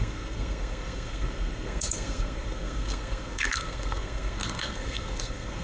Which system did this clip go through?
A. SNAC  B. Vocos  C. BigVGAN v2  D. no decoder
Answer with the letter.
A